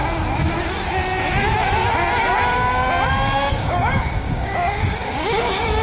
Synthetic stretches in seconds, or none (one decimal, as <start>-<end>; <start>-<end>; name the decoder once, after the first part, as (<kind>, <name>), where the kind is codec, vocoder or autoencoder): 3.5-5.8 (codec, DAC)